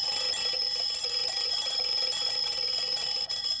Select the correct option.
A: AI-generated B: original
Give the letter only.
A